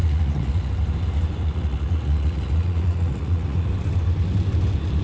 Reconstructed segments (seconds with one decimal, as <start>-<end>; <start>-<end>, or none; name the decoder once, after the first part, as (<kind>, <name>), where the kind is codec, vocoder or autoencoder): 0.0-0.7 (vocoder, Vocos); 1.4-3.7

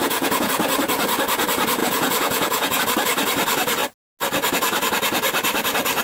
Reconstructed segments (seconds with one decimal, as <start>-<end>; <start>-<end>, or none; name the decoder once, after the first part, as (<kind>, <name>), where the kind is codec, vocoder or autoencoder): 0.0-0.5 (vocoder, Vocos); 1.8-2.8

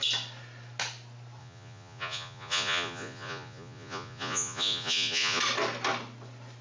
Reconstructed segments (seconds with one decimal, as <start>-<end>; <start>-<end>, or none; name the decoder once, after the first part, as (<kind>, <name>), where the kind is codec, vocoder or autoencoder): 1.4-5.4 (vocoder, Vocos)

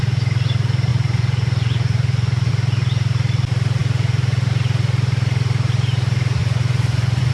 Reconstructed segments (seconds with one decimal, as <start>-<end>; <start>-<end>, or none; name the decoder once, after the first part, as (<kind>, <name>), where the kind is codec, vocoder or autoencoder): 0.9-2.5 (vocoder, Vocos); 6.4-7.3

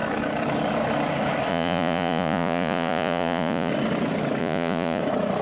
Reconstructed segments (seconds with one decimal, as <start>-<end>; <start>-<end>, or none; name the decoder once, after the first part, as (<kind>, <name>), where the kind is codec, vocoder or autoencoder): 1.5-3.7 (vocoder, Vocos); 4.4-5.0